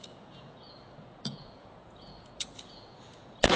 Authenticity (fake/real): fake